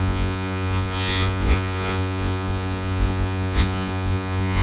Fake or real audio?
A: fake